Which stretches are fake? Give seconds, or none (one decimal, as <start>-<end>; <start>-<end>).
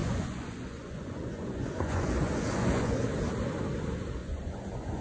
0.0-3.0; 4.2-5.0